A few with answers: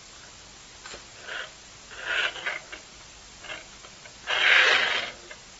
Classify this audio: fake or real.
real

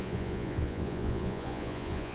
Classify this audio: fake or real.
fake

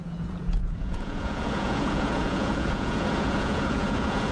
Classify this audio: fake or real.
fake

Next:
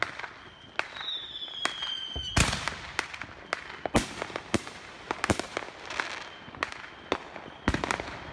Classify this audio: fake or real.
real